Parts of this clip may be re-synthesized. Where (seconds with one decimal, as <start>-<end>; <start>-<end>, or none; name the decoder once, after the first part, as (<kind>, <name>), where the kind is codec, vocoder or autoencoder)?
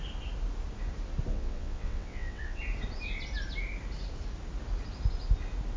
1.3-2.6 (vocoder, WaveNeXt)